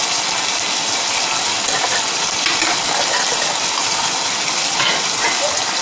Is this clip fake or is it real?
real